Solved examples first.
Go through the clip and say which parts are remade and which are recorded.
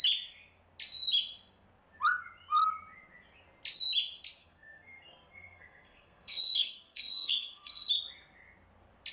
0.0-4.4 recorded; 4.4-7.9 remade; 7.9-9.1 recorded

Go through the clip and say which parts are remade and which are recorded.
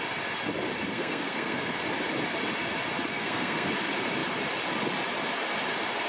0.0-0.9 recorded; 0.9-1.8 remade; 1.8-3.1 recorded; 3.1-3.7 remade; 3.7-6.1 recorded